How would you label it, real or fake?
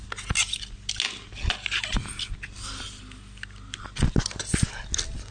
real